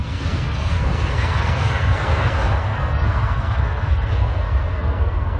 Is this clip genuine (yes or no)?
no